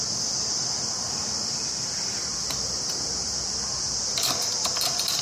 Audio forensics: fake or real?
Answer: real